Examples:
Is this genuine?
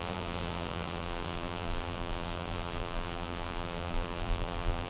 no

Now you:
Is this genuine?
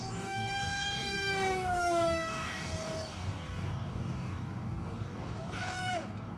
no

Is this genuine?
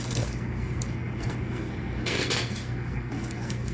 no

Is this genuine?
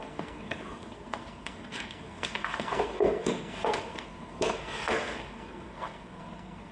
no